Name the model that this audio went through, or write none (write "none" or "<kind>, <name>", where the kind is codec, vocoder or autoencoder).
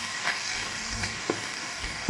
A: codec, DAC